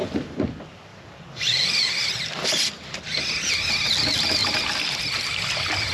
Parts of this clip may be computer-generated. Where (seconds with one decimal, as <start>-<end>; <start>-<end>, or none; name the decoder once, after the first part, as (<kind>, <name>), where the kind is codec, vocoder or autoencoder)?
0.0-0.5 (vocoder, BigVGAN v2); 0.9-3.0

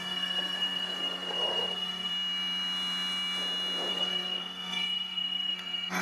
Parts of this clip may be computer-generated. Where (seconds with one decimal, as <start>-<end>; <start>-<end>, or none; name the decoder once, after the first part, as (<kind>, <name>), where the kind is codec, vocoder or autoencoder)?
0.0-2.1 (codec, SNAC); 3.9-6.0

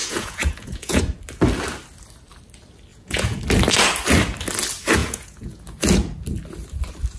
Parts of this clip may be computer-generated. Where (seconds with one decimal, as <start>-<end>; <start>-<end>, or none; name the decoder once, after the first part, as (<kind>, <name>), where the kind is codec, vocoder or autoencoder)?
0.0-1.0 (vocoder, Vocos); 2.9-3.4; 5.0-5.6